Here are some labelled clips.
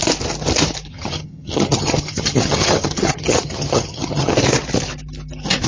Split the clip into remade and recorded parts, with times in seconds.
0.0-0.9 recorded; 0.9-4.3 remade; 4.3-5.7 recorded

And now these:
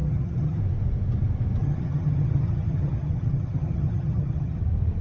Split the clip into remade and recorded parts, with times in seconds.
0.0-0.6 remade; 0.6-1.6 recorded; 1.6-4.6 remade; 4.6-5.0 recorded

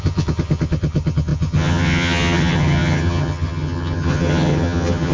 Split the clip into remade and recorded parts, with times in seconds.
0.0-5.1 remade

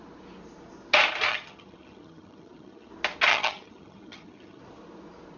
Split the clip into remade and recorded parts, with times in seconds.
0.0-1.3 recorded; 1.3-2.9 remade; 2.9-3.3 recorded; 3.3-4.6 remade; 4.6-5.4 recorded